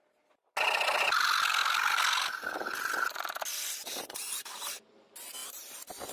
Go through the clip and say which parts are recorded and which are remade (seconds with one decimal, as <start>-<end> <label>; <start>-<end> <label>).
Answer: 0.0-6.1 recorded

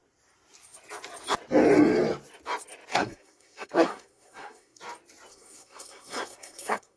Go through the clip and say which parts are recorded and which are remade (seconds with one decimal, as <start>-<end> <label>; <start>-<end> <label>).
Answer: 0.0-2.9 recorded; 2.9-4.8 remade; 4.8-5.3 recorded; 5.3-7.0 remade

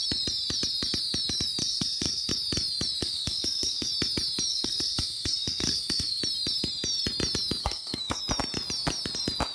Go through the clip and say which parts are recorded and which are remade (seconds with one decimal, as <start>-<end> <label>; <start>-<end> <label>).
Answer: 0.0-1.6 recorded; 1.6-2.3 remade; 2.3-3.0 recorded; 3.0-3.9 remade; 3.9-4.5 recorded; 4.5-6.2 remade; 6.2-7.6 recorded; 7.6-8.2 remade; 8.2-9.5 recorded

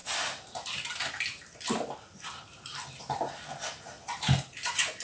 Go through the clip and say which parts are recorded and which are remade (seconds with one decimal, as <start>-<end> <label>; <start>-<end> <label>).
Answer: 0.0-5.0 recorded

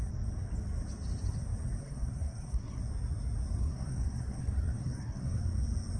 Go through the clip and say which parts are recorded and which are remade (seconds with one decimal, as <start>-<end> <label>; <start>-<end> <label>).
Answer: 0.0-1.8 recorded; 1.8-2.8 remade; 2.8-3.6 recorded; 3.6-5.4 remade; 5.4-6.0 recorded

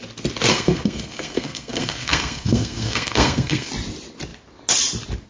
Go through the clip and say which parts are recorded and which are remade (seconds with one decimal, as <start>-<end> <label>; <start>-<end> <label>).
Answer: 0.0-0.5 recorded; 0.5-3.7 remade; 3.7-5.3 recorded

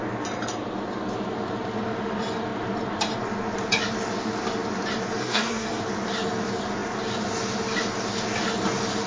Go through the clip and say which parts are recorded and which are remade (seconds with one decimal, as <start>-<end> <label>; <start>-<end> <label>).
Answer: 0.0-5.2 recorded; 5.2-5.8 remade; 5.8-9.1 recorded

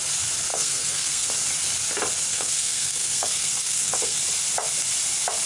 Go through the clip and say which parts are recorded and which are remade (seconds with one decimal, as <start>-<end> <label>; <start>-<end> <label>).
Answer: 0.0-0.5 recorded; 0.5-1.3 remade; 1.3-2.3 recorded; 2.3-4.2 remade; 4.2-5.5 recorded